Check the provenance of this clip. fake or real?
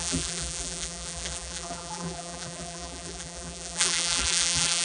fake